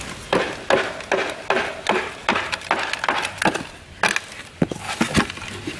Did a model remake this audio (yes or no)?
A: no